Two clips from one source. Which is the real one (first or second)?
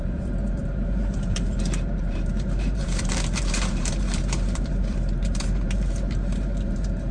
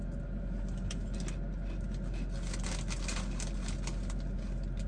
second